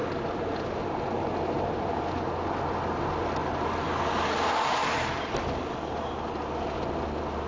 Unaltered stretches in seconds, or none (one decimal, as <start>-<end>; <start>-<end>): 0.0-7.5